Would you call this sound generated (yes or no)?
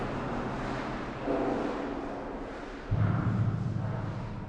no